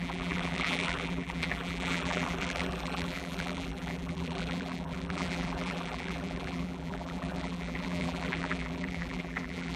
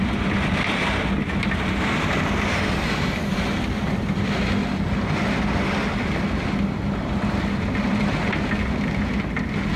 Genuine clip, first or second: second